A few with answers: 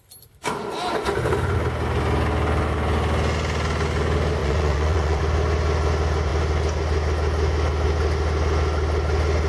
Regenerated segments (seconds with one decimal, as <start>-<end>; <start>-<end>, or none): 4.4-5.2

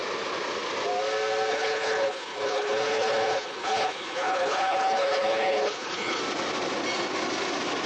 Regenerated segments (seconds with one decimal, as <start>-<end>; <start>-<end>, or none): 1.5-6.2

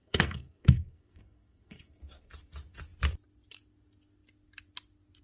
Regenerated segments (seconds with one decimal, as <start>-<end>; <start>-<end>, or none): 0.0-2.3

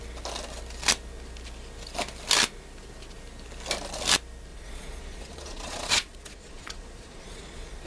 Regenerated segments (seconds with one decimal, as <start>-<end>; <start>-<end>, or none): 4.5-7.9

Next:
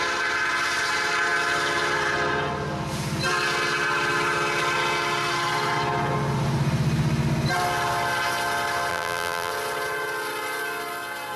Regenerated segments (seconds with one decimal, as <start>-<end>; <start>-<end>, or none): 8.9-9.5